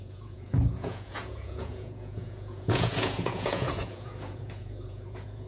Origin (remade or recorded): remade